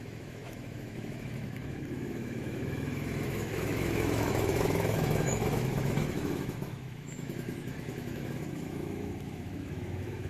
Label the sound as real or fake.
fake